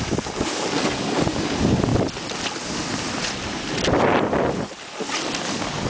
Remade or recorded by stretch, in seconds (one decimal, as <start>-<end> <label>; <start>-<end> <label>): 0.0-1.9 remade; 1.9-5.4 recorded; 5.4-5.9 remade